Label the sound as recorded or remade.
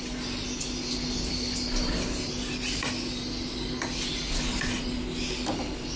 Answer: recorded